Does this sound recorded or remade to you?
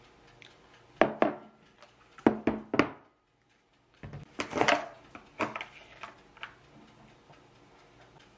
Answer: recorded